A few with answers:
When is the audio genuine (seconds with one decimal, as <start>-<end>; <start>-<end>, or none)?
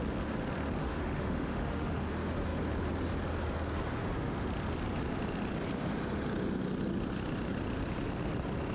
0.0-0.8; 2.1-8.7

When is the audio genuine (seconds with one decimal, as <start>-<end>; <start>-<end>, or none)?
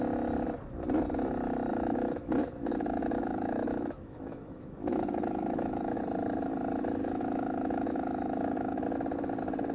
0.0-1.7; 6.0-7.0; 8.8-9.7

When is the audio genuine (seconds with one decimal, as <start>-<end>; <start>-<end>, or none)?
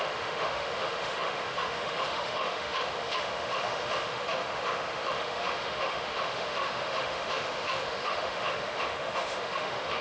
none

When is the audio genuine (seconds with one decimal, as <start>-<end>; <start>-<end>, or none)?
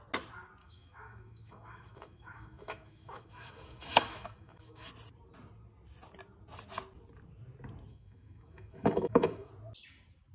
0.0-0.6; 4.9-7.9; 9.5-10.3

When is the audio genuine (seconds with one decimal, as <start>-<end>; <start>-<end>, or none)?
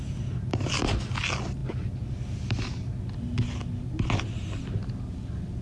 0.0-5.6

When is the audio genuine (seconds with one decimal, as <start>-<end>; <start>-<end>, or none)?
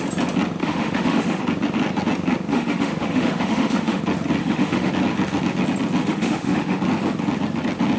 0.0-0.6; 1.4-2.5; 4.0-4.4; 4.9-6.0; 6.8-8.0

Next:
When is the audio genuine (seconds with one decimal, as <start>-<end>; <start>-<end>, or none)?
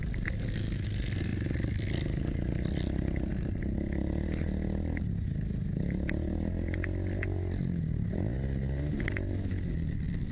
0.0-10.3